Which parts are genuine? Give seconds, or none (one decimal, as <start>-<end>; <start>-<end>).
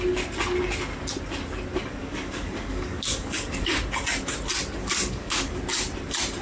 0.0-2.0; 3.8-4.8; 5.6-6.4